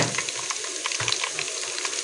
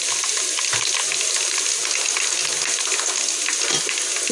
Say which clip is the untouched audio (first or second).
second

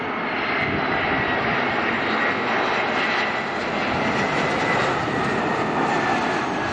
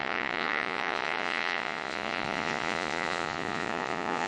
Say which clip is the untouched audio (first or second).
first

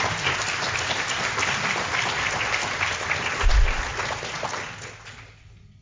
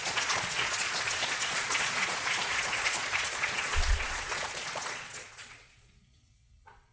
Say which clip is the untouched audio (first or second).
first